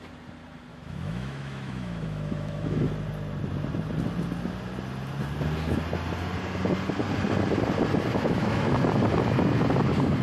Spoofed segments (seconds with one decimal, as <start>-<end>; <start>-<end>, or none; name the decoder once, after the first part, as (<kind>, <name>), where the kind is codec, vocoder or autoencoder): 0.7-2.9 (autoencoder, DAC-VAE); 8.1-8.7